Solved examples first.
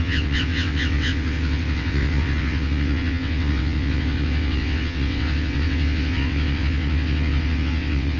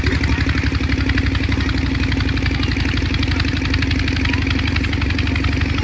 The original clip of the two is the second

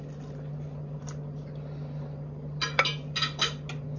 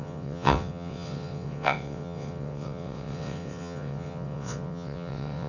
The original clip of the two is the first